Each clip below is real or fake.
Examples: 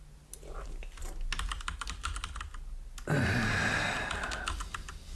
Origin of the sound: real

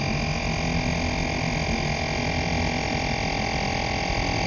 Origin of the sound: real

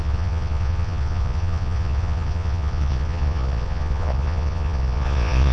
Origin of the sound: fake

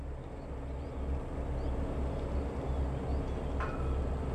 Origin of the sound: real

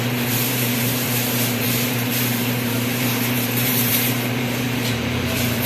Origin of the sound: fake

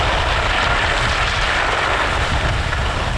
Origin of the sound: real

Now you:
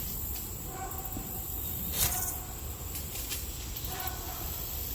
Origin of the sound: fake